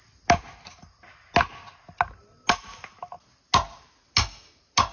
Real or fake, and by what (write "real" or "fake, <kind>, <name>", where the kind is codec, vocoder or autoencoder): real